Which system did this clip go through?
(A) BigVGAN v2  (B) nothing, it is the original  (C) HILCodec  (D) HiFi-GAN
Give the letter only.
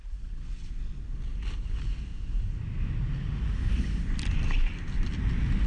B